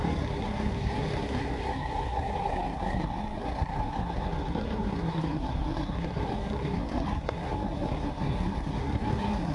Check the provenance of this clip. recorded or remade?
remade